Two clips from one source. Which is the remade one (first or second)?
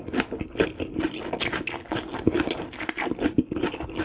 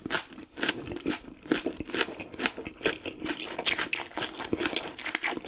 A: second